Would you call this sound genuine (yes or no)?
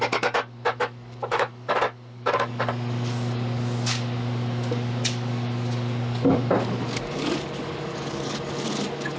no